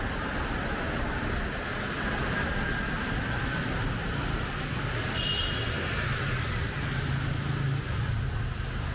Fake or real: real